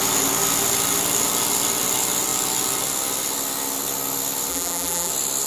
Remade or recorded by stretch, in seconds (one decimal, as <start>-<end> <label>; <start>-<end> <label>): 0.0-4.5 recorded; 4.5-5.1 remade; 5.1-5.5 recorded